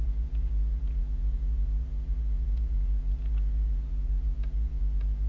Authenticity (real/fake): fake